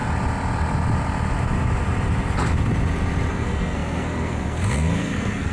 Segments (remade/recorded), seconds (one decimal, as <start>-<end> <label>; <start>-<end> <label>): 0.0-3.3 recorded; 3.3-5.5 remade